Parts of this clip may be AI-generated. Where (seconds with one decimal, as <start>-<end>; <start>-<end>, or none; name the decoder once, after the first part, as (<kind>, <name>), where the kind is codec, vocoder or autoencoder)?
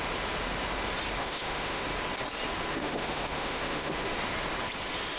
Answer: 1.2-1.8 (autoencoder, DAC-VAE); 2.7-3.9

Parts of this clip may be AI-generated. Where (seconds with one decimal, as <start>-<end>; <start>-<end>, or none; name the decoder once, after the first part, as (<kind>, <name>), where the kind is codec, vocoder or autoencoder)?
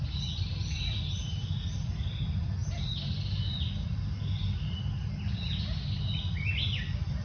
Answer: none